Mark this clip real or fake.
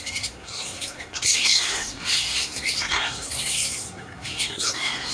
fake